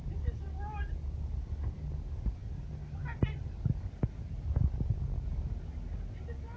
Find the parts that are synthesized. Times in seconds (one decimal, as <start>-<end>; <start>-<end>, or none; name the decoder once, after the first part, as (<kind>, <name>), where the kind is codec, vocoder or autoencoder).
none